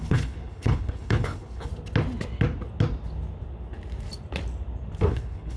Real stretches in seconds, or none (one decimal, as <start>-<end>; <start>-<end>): 1.7-5.1